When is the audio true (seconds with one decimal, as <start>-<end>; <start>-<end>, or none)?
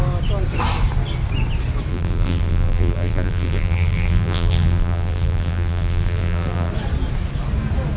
0.0-1.9; 6.7-8.0